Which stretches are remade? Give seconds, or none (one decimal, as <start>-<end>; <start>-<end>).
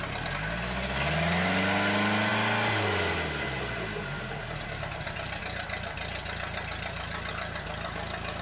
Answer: none